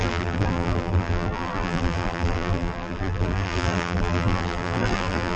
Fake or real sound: fake